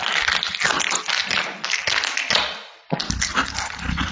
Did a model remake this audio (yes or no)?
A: no